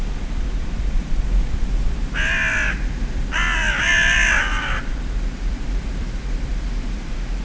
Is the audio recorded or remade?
remade